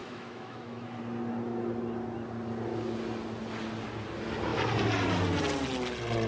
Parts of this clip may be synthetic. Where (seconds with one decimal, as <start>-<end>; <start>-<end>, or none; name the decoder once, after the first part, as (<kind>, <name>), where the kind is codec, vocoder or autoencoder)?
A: 0.0-1.0 (autoencoder, DAC-VAE)